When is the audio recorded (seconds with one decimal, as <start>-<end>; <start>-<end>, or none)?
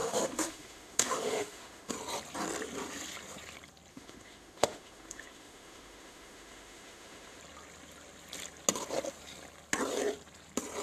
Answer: 1.9-3.9; 7.4-10.8